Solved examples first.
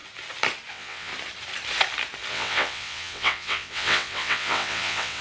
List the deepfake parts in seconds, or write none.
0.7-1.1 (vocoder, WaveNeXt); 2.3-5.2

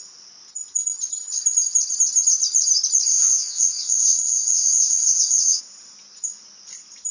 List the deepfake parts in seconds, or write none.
3.1-5.6 (vocoder, WaveNeXt)